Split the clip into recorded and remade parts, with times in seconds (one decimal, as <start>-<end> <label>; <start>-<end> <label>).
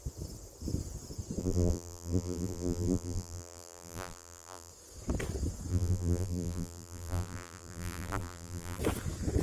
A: 0.0-1.4 recorded; 1.4-4.7 remade; 4.7-5.7 recorded; 5.7-8.8 remade; 8.8-9.4 recorded